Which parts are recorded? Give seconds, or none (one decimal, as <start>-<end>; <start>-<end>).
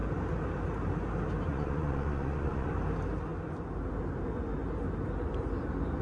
0.0-1.5; 2.7-6.0